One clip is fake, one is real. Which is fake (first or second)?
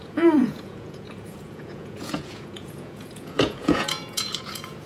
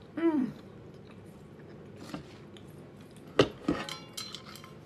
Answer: first